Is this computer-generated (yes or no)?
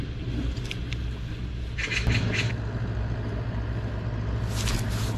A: no